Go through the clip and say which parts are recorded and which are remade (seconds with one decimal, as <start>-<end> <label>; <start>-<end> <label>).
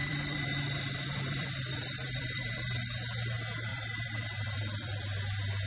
0.0-2.5 remade; 2.5-3.7 recorded; 3.7-5.2 remade; 5.2-5.7 recorded